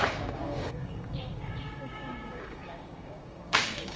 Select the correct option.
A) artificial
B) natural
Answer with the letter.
A